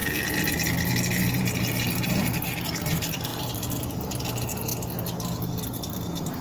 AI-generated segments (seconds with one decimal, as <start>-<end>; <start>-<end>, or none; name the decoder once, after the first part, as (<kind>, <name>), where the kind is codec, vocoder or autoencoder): 1.3-4.7 (vocoder, BigVGAN v2); 5.8-6.4